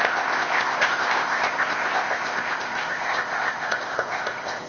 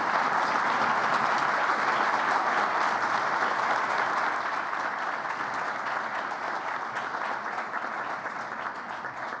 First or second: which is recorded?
second